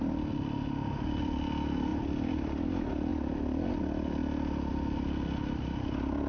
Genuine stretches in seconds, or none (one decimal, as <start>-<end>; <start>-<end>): 0.0-6.3